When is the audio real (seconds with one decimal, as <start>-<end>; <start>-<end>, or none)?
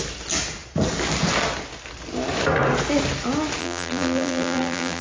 0.0-3.6